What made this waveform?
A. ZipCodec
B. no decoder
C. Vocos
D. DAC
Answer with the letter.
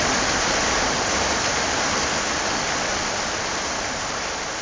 B